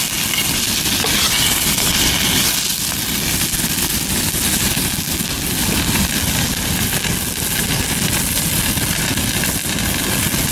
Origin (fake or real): real